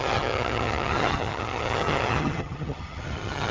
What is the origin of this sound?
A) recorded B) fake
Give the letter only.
B